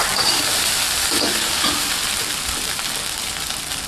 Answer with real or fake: fake